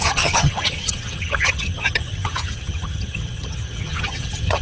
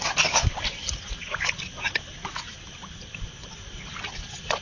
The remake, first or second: first